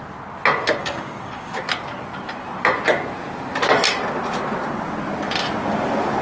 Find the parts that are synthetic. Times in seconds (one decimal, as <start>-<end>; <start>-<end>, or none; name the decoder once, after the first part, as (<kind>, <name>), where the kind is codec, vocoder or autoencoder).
0.8-1.6 (codec, DAC)